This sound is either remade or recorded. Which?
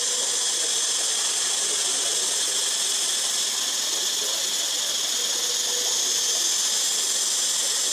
recorded